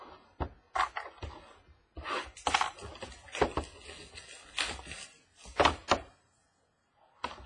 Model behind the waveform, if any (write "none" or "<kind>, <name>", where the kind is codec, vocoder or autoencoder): none